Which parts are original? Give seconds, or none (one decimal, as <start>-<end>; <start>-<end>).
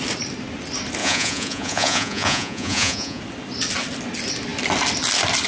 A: 0.0-1.0; 3.2-5.5